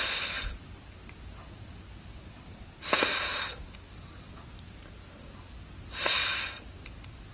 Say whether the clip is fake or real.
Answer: real